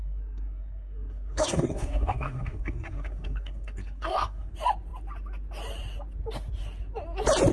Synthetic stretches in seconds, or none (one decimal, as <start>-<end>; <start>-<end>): 0.0-4.5